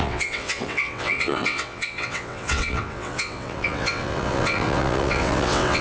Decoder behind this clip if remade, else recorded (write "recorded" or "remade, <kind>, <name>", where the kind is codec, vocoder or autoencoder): remade, vocoder, WaveNeXt